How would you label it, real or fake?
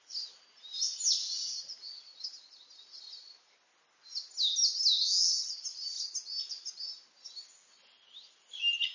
real